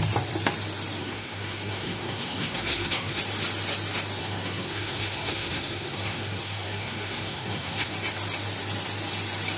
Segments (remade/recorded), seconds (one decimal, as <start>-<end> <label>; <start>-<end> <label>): 0.0-1.0 recorded; 1.0-3.2 remade; 3.2-4.2 recorded; 4.2-7.9 remade; 7.9-9.6 recorded